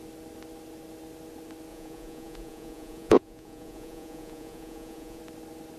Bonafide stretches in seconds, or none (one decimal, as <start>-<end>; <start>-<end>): 0.0-1.7; 5.2-5.8